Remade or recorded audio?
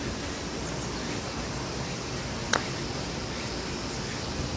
recorded